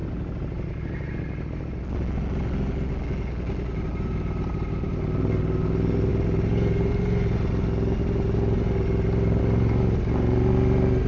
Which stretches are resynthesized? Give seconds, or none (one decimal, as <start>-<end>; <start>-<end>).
none